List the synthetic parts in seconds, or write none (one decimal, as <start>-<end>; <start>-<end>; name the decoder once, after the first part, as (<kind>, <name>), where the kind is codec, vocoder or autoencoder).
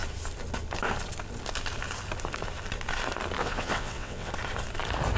3.4-4.3 (vocoder, WaveNeXt)